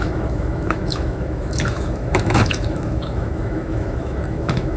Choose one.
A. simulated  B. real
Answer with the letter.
A